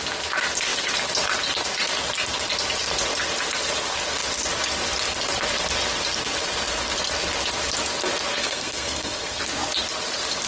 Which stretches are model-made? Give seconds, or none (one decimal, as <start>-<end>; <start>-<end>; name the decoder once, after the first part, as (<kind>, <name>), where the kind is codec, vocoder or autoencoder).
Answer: 8.4-9.4 (codec, SNAC)